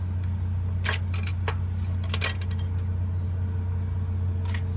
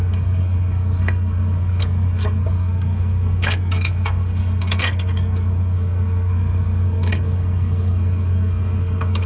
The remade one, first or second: second